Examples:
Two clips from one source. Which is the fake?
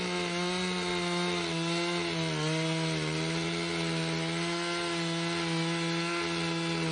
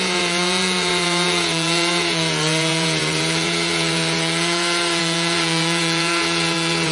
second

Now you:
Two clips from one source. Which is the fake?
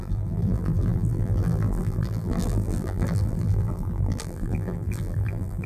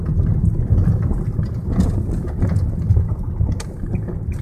first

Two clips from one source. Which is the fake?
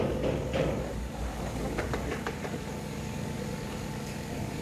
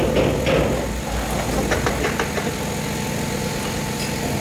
first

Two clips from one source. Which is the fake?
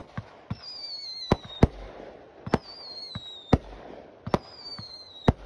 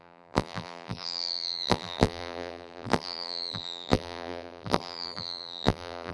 second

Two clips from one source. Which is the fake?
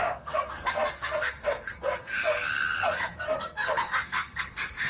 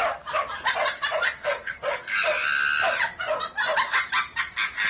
first